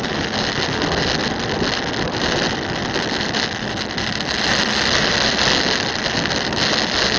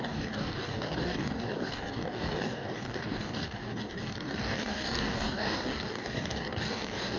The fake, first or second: second